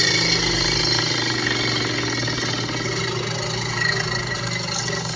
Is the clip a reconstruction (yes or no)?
no